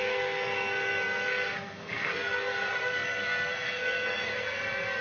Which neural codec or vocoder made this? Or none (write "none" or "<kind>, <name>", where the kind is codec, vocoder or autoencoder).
codec, SNAC